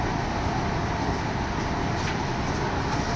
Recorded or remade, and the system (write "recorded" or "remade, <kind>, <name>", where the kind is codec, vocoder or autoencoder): recorded